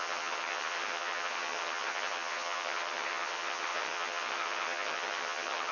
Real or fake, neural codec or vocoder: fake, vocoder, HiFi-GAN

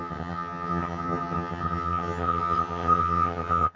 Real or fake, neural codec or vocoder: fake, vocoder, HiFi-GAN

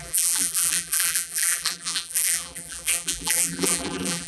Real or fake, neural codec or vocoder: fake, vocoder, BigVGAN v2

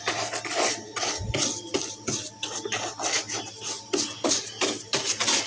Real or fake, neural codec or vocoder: real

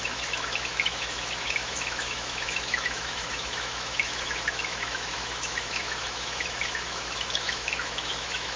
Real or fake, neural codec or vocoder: fake, autoencoder, DAC-VAE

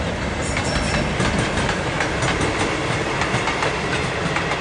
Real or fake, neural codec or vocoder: real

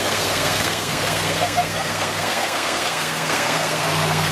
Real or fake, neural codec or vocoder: fake, codec, SNAC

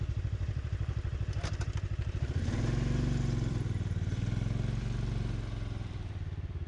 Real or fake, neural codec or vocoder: fake, vocoder, BigVGAN v2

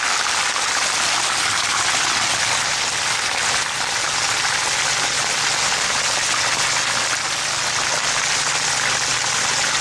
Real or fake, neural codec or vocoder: real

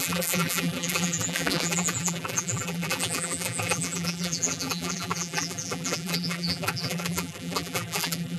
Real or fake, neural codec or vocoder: fake, vocoder, BigVGAN v2